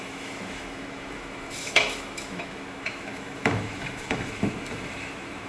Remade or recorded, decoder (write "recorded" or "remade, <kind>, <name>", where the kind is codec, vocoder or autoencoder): remade, autoencoder, DAC-VAE